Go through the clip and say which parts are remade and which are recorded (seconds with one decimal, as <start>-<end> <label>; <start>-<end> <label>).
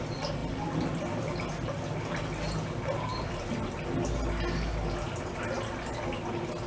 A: 0.0-6.7 recorded